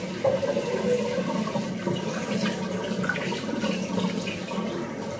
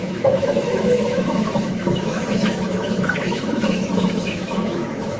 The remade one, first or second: second